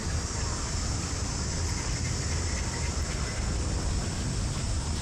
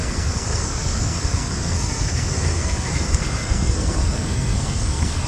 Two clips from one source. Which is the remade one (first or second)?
second